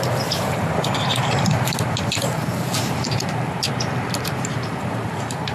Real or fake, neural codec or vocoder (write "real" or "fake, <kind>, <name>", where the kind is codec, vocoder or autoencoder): fake, vocoder, BigVGAN v2